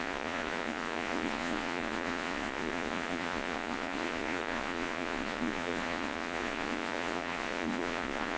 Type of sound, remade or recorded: remade